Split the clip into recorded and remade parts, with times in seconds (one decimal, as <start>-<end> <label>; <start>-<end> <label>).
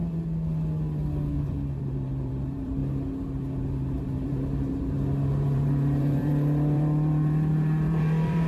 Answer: 0.0-1.8 recorded; 1.8-2.8 remade; 2.8-3.6 recorded; 3.6-8.5 remade